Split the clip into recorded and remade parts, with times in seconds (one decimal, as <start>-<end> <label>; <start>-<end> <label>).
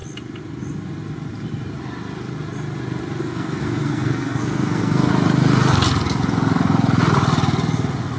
0.0-3.2 recorded; 3.2-5.1 remade; 5.1-8.2 recorded